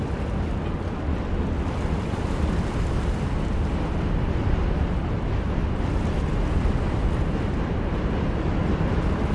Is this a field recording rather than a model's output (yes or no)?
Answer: yes